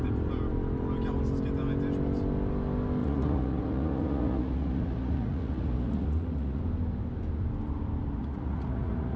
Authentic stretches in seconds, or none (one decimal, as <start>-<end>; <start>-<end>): 0.0-3.0; 6.6-8.2